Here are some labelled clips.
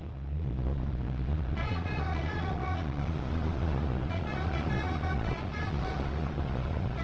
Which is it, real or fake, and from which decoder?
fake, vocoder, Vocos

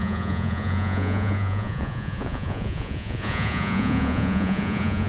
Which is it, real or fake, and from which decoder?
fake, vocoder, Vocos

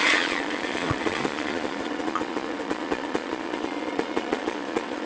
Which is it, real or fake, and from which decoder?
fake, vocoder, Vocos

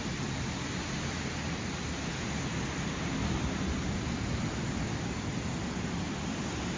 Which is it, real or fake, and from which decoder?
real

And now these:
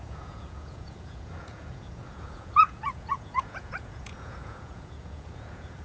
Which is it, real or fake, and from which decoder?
fake, vocoder, Vocos